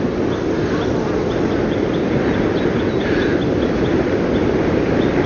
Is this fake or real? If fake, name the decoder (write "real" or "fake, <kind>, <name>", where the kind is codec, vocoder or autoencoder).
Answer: real